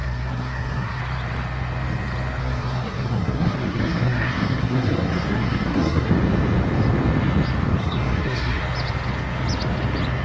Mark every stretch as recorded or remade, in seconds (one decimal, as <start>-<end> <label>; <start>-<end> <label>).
0.0-1.0 remade; 1.0-2.4 recorded; 2.4-6.1 remade; 6.1-7.8 recorded; 7.8-8.6 remade; 8.6-10.2 recorded